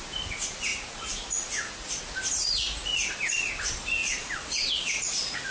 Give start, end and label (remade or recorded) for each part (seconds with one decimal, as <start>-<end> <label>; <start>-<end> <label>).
0.0-0.7 recorded; 0.7-2.0 remade; 2.0-2.4 recorded; 2.4-3.1 remade; 3.1-4.0 recorded; 4.0-5.5 remade